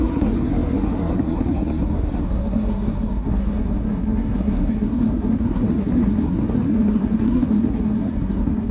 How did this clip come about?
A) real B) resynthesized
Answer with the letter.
B